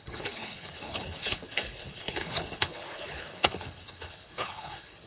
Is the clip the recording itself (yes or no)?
no